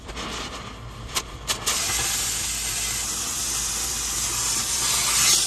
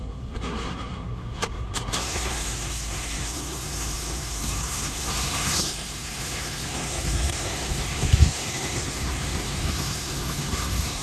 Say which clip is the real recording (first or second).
first